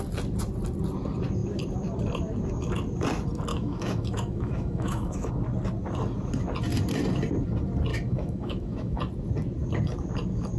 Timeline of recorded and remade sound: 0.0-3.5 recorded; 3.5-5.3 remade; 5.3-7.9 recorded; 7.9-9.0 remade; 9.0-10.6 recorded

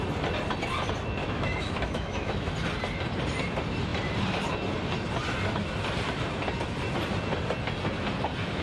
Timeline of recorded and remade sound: 0.0-1.2 recorded; 1.2-2.5 remade; 2.5-8.6 recorded

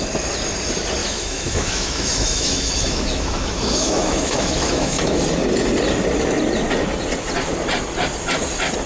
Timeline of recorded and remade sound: 0.0-1.0 recorded; 1.0-5.2 remade; 5.2-8.9 recorded